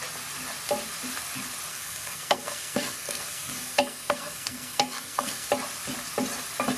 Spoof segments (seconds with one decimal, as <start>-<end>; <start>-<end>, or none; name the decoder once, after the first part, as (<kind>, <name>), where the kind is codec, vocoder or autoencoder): 1.7-5.5 (codec, SNAC)